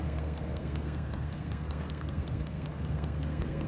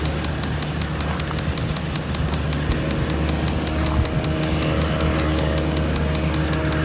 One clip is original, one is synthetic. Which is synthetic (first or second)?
first